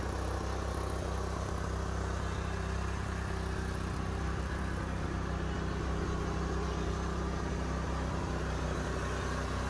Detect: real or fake real